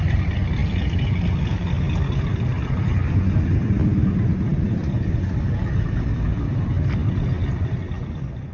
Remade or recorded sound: recorded